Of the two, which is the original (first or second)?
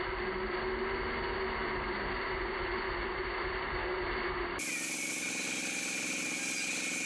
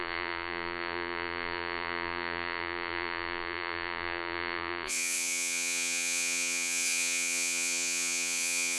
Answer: first